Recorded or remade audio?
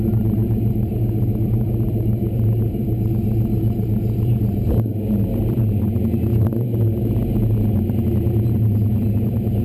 remade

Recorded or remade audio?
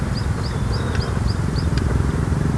remade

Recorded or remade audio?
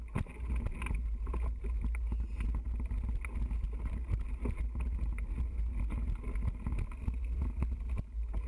recorded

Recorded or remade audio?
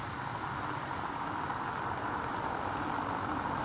recorded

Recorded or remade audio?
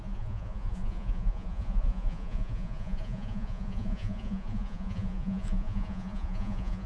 remade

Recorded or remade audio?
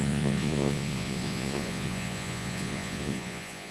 remade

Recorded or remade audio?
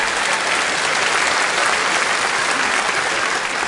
recorded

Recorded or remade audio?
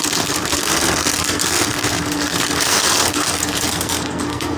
remade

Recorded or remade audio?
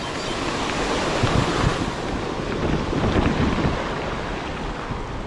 recorded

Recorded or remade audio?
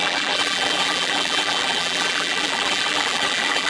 remade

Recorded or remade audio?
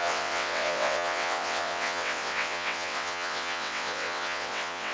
remade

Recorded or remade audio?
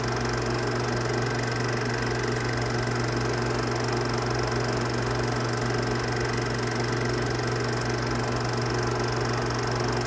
recorded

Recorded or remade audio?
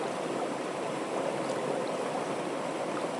recorded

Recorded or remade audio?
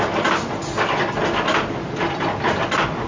recorded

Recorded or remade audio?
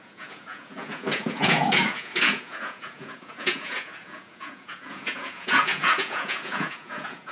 remade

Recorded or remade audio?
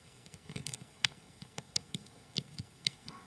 remade